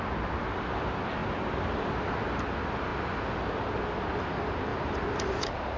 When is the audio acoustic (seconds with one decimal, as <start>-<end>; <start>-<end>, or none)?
0.0-4.7